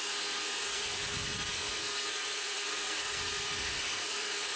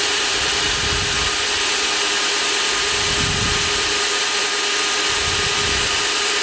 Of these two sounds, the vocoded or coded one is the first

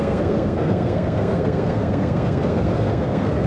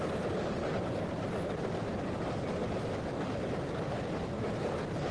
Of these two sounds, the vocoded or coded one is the first